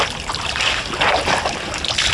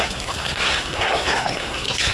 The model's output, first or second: second